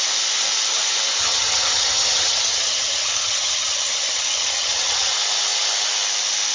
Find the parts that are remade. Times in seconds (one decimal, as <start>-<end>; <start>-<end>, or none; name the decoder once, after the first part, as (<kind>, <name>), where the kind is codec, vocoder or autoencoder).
1.2-5.1 (vocoder, HiFi-GAN)